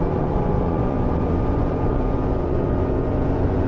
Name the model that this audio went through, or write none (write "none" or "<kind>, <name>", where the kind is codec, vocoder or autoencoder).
vocoder, Vocos